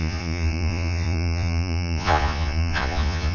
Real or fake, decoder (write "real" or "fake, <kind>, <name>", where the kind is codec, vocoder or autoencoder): fake, vocoder, Vocos